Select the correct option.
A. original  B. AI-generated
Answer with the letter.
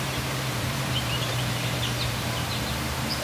B